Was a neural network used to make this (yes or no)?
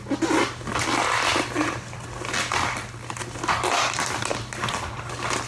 no